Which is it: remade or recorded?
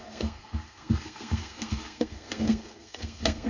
remade